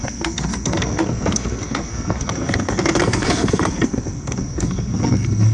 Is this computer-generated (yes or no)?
yes